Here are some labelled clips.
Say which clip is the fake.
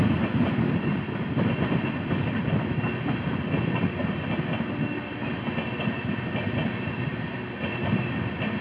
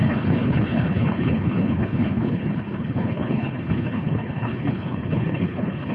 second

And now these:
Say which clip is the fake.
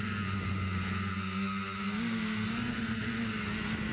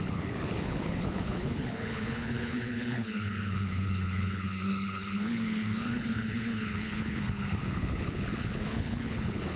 second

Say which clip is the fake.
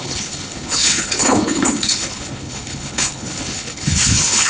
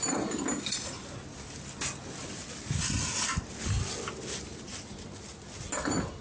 first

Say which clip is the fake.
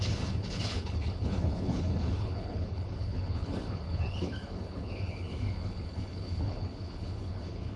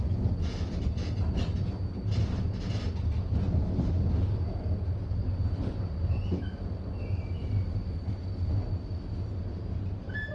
first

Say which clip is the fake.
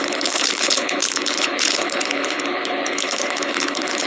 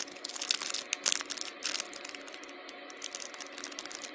first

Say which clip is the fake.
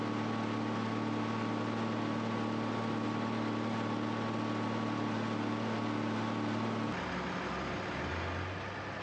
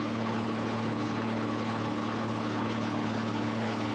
second